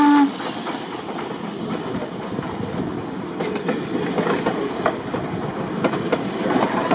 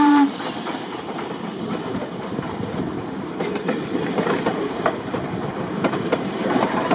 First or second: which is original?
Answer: first